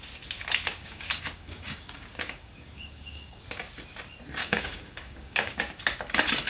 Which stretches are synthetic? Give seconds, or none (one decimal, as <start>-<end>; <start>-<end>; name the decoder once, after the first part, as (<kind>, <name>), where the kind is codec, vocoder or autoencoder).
0.7-3.4 (codec, DAC); 4.4-5.6